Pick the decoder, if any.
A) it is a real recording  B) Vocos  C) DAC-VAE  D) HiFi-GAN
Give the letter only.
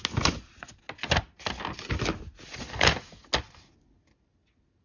A